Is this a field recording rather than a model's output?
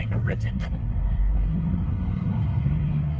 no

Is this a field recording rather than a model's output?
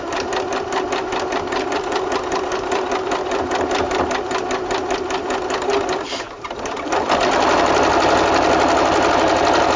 yes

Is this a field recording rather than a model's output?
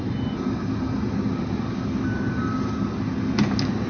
yes